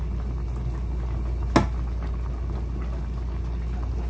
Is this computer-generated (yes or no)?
no